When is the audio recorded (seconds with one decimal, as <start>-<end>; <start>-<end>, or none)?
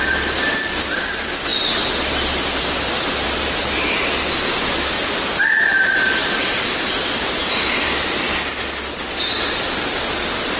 0.0-1.5; 3.9-6.2; 7.4-10.6